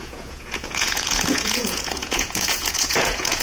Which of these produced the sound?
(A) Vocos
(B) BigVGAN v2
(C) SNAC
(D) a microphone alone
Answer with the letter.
A